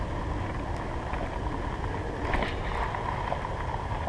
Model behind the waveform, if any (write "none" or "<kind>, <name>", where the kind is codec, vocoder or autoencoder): none